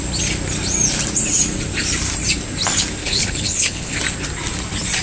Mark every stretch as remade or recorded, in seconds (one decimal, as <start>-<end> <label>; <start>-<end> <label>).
0.0-3.0 recorded; 3.0-3.9 remade; 3.9-5.0 recorded